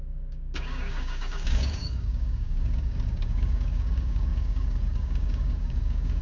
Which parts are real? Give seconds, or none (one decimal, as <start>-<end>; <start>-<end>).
none